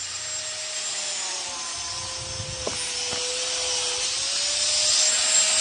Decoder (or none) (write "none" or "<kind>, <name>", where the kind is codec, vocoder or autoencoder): none